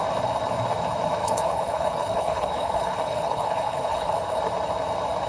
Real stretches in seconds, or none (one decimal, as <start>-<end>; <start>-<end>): 0.0-1.2; 4.4-5.3